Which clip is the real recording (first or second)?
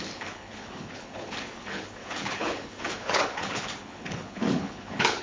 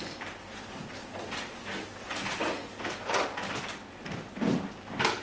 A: second